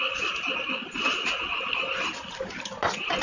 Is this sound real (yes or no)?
yes